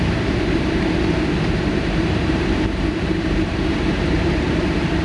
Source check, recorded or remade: remade